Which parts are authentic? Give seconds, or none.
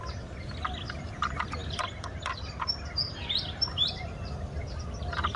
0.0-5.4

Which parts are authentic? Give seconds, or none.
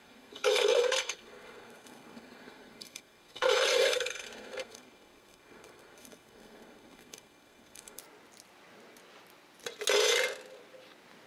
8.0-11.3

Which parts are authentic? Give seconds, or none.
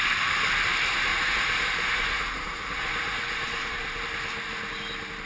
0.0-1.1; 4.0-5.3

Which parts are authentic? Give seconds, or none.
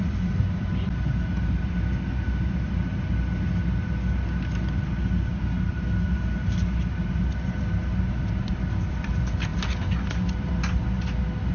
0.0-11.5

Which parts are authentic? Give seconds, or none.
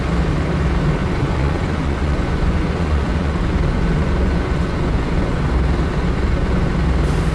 0.0-1.0; 5.4-5.9; 6.7-7.3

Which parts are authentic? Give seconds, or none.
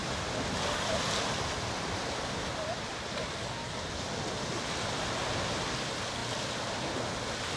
0.0-7.6